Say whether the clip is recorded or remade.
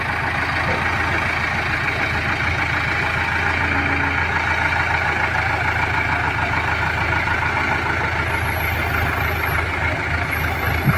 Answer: recorded